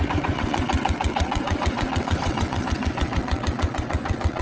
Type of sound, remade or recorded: remade